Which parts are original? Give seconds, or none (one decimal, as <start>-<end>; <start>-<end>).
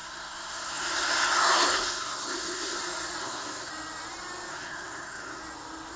2.8-3.2; 3.7-4.5; 5.4-6.0